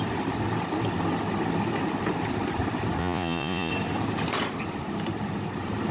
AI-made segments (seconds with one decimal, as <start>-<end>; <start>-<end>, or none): 3.0-3.7